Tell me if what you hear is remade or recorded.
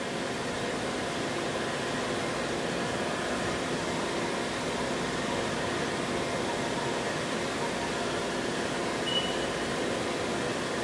recorded